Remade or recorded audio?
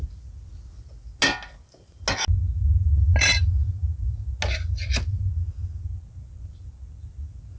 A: recorded